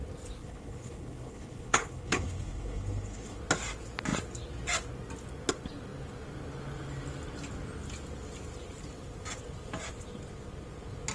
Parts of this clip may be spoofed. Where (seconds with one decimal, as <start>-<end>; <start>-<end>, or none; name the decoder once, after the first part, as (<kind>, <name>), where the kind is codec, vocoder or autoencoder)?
0.4-3.4 (codec, HILCodec)